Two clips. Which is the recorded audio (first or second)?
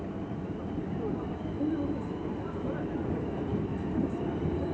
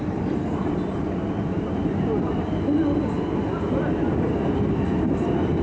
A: second